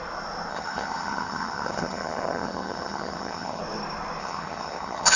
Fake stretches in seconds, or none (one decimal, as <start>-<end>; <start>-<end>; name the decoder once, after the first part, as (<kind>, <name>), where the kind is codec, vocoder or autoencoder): 0.5-3.6 (vocoder, HiFi-GAN); 4.2-5.2